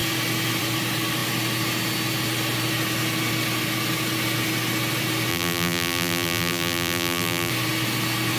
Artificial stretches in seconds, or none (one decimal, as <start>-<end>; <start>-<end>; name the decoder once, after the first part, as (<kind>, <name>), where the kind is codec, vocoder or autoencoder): 5.3-7.5 (vocoder, BigVGAN v2)